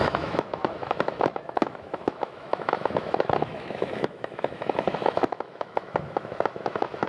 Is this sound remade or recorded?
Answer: remade